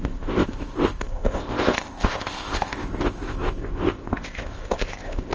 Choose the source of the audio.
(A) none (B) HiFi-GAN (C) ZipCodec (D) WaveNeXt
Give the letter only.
C